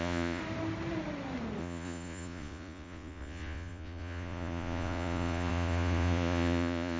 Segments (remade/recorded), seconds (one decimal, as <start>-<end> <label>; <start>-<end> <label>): 0.0-0.4 remade; 0.4-1.6 recorded; 1.6-7.0 remade